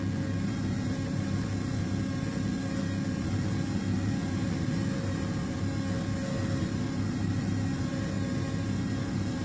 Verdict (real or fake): real